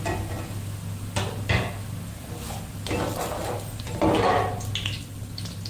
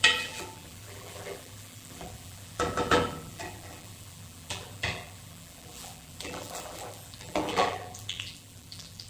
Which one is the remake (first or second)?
second